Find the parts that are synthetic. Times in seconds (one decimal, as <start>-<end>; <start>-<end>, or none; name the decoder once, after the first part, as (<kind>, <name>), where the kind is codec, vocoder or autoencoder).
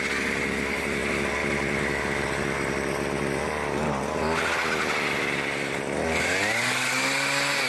none